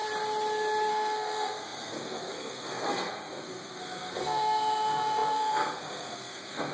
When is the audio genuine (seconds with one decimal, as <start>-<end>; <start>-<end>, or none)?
0.0-0.9